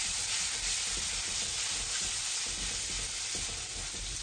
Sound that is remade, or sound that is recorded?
recorded